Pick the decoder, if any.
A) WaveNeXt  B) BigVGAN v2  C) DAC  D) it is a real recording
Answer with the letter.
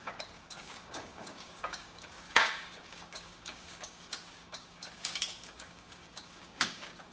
C